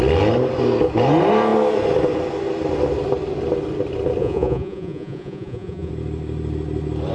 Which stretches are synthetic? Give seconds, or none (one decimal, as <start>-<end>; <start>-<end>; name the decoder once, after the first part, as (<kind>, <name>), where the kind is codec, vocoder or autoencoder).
4.2-5.9 (vocoder, Vocos)